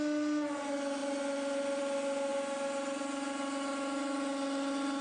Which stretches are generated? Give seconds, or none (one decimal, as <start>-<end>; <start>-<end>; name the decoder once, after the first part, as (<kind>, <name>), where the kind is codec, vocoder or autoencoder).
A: 1.0-1.8 (vocoder, BigVGAN v2)